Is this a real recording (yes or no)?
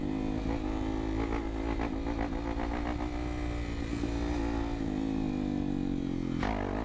yes